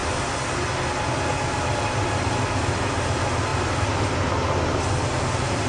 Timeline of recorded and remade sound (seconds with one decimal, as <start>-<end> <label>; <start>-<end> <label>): 0.0-5.7 recorded